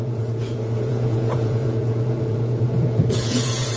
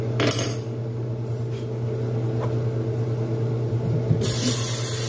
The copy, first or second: first